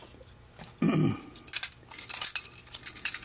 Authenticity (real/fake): real